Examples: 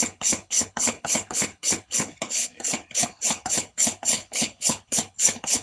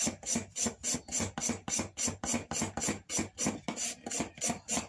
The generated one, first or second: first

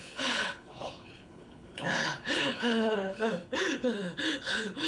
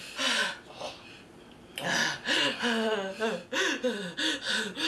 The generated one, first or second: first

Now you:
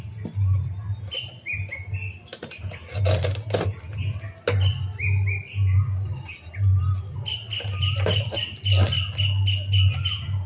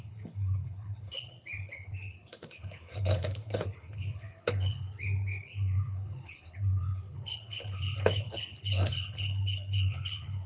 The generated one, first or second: second